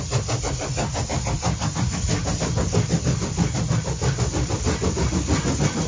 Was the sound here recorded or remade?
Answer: recorded